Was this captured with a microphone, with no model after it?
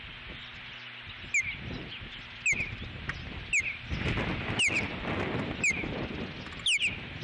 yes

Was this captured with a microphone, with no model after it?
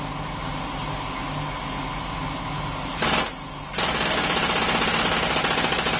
yes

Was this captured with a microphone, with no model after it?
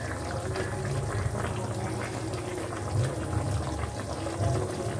yes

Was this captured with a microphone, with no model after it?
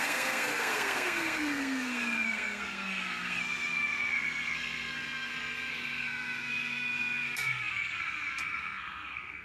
no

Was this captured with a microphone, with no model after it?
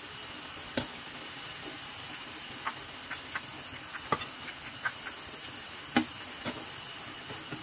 yes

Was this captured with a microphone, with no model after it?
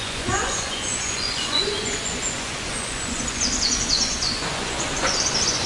no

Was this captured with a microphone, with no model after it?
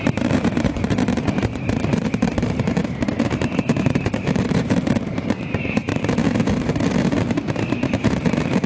no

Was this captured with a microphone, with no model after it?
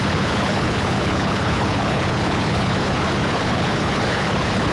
no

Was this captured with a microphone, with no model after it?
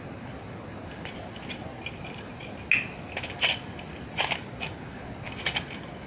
yes